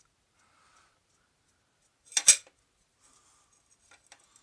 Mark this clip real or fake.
real